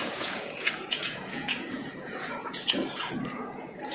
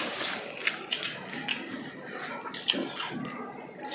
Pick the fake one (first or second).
first